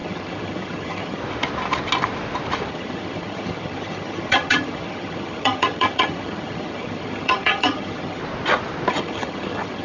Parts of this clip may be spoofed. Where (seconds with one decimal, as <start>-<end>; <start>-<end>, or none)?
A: 0.0-1.2; 2.7-8.2; 8.9-9.8